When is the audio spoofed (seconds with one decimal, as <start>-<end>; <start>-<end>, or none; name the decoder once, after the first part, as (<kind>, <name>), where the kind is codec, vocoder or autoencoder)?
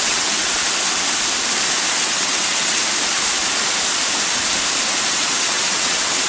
0.0-0.6 (vocoder, WaveNeXt); 2.0-2.8; 5.1-6.3